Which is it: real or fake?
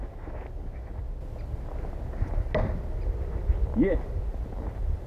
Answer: real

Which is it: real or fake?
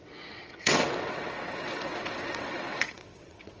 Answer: fake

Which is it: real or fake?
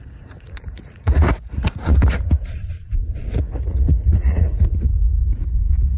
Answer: fake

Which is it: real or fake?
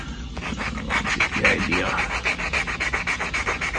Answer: real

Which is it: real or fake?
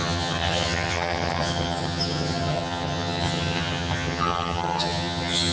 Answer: fake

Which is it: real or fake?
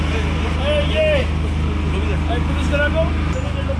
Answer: real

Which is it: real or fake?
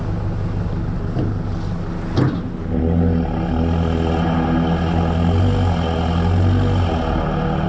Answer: real